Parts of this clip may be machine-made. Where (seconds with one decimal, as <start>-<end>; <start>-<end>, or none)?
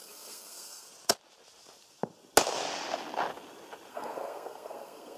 0.0-0.9; 3.9-5.2